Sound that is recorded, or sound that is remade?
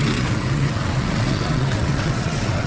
remade